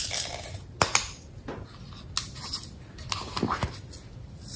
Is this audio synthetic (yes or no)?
no